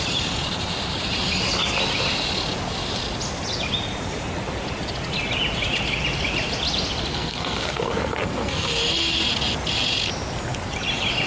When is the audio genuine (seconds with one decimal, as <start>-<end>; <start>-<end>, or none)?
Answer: 0.0-7.1; 8.8-11.3